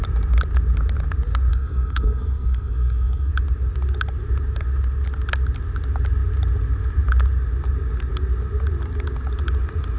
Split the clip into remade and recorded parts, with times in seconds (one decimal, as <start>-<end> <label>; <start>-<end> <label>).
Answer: 0.0-1.5 recorded; 1.5-3.3 remade; 3.3-10.0 recorded

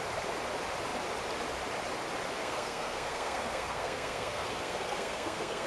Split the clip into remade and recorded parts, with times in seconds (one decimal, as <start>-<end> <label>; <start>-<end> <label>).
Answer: 0.0-2.4 recorded; 2.4-5.7 remade

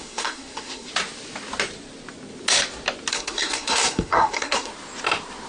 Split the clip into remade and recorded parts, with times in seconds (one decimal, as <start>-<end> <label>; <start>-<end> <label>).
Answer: 0.0-0.9 remade; 0.9-3.1 recorded; 3.1-4.7 remade; 4.7-5.5 recorded

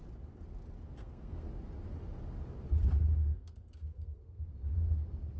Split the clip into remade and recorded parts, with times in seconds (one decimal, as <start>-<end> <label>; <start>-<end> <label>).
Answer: 0.0-1.0 recorded; 1.0-1.5 remade; 1.5-3.2 recorded; 3.2-4.4 remade; 4.4-5.4 recorded

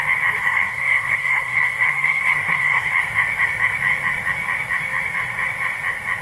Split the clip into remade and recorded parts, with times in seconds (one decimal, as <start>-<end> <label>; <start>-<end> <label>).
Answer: 0.0-0.4 recorded; 0.4-2.9 remade; 2.9-6.2 recorded

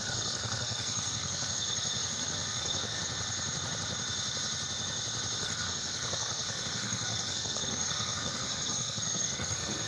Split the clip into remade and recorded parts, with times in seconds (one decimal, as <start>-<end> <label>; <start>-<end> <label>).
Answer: 0.0-3.0 remade; 3.0-5.4 recorded; 5.4-9.9 remade

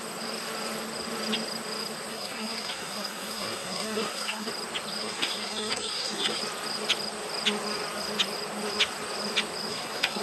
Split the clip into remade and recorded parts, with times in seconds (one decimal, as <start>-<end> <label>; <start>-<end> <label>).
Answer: 0.0-2.1 recorded; 2.1-4.5 remade; 4.5-5.0 recorded; 5.0-6.4 remade; 6.4-9.7 recorded; 9.7-10.2 remade

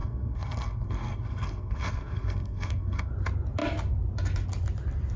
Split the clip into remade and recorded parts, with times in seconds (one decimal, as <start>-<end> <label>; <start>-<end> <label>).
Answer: 0.0-3.1 remade; 3.1-5.2 recorded